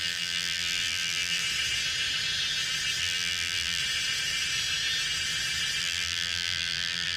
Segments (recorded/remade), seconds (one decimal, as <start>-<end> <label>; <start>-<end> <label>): 0.0-1.4 remade; 1.4-3.0 recorded; 3.0-3.8 remade; 3.8-5.8 recorded; 5.8-7.2 remade